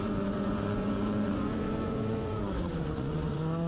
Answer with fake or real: fake